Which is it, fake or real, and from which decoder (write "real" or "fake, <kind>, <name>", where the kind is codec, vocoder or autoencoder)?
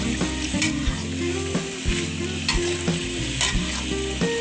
real